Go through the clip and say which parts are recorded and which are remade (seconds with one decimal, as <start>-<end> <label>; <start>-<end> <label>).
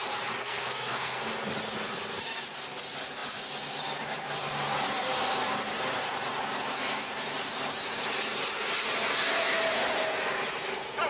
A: 0.0-0.4 recorded; 0.4-1.2 remade; 1.2-11.1 recorded